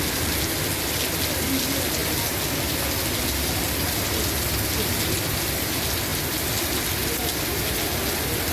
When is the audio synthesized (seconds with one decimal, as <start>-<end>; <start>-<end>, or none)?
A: none